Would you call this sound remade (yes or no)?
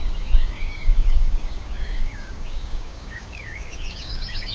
yes